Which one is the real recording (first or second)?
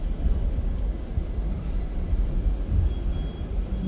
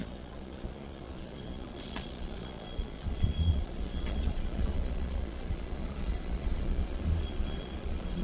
first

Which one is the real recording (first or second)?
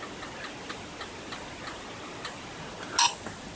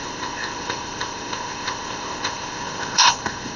first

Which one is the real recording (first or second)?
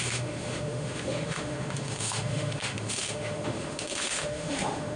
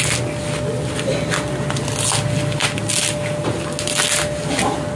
second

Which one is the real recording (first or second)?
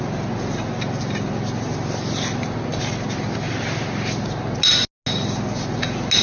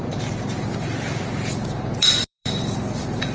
first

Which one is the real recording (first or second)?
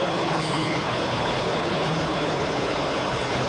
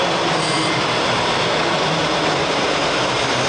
second